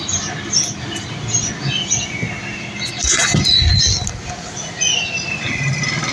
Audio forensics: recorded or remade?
recorded